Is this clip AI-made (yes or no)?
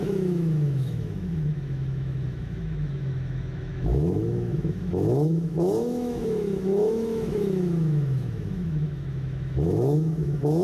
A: yes